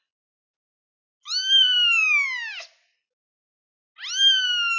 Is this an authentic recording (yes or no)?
yes